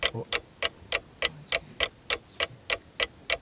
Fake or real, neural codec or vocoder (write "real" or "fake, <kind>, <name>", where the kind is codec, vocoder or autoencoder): real